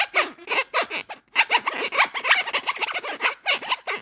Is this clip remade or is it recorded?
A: recorded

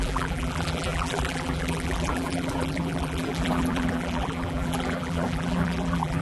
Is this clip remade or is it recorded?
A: remade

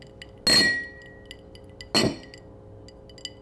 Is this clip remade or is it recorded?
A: recorded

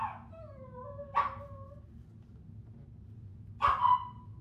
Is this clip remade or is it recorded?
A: recorded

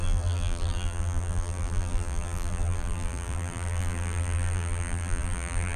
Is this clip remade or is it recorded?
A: remade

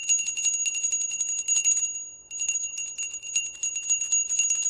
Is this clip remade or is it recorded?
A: recorded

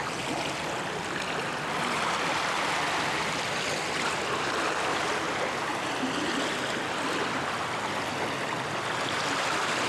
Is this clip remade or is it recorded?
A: recorded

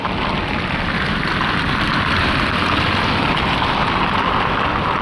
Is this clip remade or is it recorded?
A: recorded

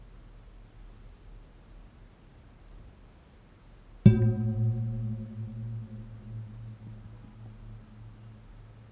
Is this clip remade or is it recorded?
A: recorded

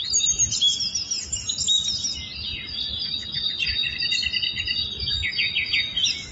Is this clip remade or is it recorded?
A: recorded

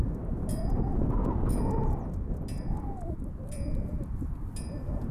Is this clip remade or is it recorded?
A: recorded